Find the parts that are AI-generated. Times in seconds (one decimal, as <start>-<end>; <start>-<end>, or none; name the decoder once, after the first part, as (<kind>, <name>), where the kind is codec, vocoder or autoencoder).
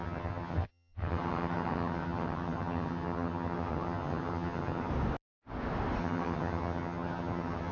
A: 0.0-4.9 (vocoder, HiFi-GAN); 6.0-7.7